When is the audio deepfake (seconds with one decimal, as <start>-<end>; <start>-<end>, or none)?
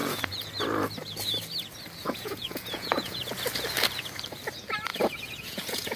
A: 0.0-0.5; 2.0-3.2; 4.9-6.0